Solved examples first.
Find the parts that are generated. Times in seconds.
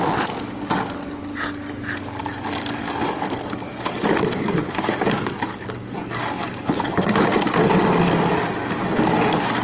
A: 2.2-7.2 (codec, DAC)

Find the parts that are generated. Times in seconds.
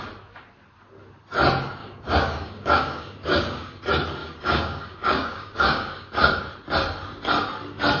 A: 1.8-3.8 (codec, DAC); 4.2-6.4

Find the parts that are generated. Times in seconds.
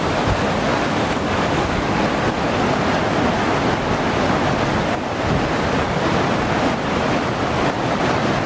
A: 0.7-2.0 (codec, DAC)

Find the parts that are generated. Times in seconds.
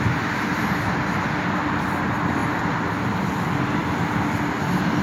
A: none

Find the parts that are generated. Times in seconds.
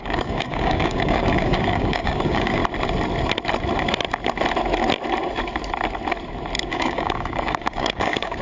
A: 0.0-2.6 (codec, DAC); 6.7-8.4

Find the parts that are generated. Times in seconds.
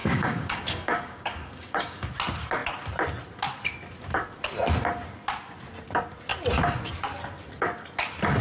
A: 0.0-2.1 (codec, DAC)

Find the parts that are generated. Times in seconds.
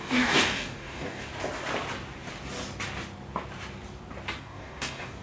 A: 0.0-1.3 (codec, DAC); 4.4-5.2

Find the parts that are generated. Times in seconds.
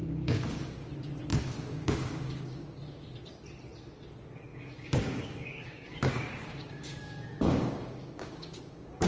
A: 0.0-0.9 (codec, DAC); 1.3-2.8; 4.5-9.1